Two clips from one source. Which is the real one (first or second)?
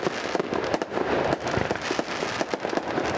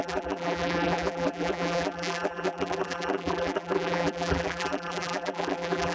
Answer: first